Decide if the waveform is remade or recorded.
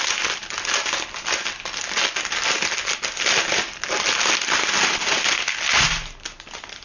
recorded